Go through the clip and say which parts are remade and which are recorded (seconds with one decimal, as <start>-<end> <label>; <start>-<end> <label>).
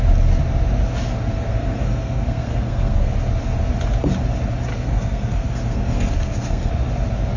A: 0.0-1.3 recorded; 1.3-3.1 remade; 3.1-4.7 recorded; 4.7-6.7 remade; 6.7-7.4 recorded